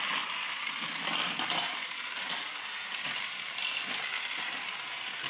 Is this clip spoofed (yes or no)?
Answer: no